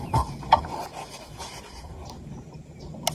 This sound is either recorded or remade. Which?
recorded